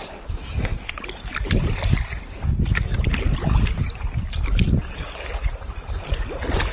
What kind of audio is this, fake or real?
real